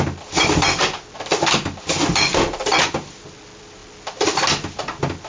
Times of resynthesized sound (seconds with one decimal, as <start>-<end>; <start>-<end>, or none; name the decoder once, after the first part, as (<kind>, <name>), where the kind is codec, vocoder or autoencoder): none